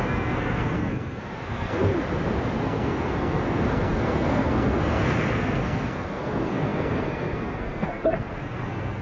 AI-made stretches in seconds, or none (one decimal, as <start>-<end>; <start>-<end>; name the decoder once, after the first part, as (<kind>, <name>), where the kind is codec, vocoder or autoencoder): 0.0-1.9 (codec, SNAC); 2.6-9.0